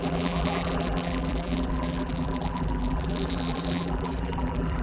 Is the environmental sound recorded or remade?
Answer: remade